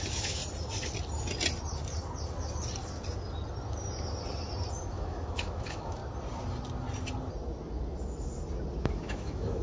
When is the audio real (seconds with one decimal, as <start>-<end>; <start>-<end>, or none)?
0.4-4.8; 6.0-8.8

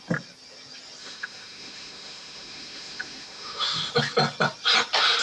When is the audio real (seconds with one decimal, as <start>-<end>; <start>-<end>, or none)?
0.0-1.0; 3.9-5.2

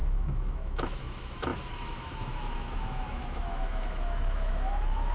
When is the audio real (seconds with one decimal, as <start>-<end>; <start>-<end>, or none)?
none

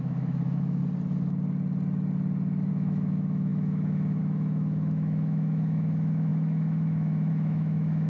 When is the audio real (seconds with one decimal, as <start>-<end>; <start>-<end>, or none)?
0.8-2.7

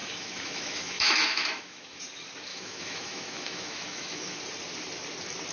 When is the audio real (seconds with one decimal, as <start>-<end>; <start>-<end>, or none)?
2.0-2.5; 4.4-5.5

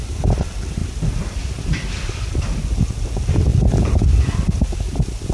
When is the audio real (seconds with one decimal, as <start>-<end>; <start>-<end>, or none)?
0.0-5.3

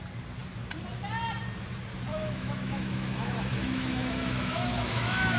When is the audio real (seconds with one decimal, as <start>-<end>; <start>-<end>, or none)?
0.0-2.1